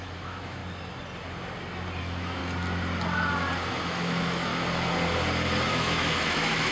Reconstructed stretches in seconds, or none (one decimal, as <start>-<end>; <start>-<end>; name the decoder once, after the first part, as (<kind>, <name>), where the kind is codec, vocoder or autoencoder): 0.0-0.6 (autoencoder, DAC-VAE); 2.0-2.4; 3.7-4.5; 5.7-6.7